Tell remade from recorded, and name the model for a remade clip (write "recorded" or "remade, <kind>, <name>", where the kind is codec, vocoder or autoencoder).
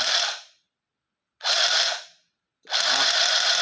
recorded